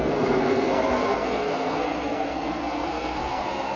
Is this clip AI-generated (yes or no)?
yes